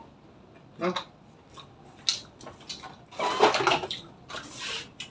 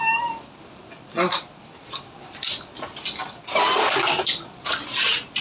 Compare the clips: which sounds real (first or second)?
first